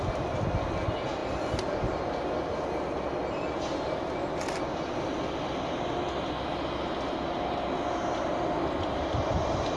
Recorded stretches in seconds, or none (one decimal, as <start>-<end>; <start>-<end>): 0.0-9.8